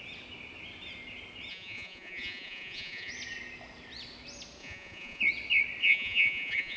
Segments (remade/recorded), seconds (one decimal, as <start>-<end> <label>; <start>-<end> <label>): 0.0-1.5 recorded; 1.5-3.1 remade; 3.1-4.6 recorded; 4.6-5.2 remade; 5.2-5.8 recorded; 5.8-6.8 remade